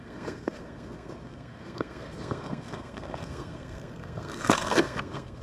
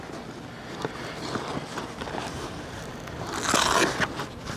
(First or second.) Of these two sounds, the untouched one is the second